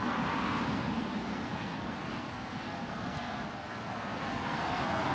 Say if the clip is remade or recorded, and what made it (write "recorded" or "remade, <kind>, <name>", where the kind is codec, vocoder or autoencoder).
remade, codec, SNAC